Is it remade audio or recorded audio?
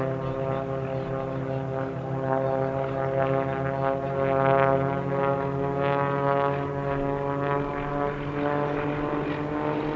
recorded